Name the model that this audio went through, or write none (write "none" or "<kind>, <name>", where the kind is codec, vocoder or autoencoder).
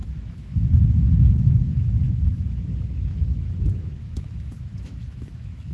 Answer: autoencoder, DAC-VAE